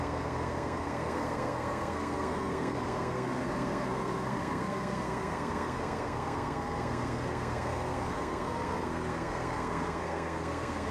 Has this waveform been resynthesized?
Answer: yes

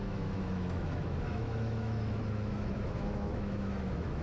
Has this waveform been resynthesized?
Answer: yes